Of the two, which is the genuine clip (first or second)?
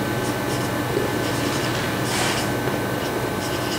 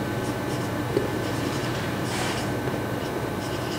first